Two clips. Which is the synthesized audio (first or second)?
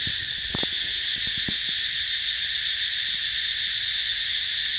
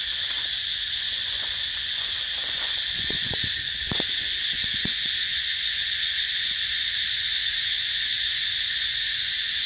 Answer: second